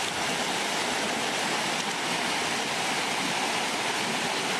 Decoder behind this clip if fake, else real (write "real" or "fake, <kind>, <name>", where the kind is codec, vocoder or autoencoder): real